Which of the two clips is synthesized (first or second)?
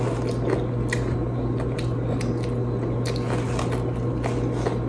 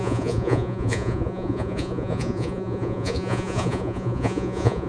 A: second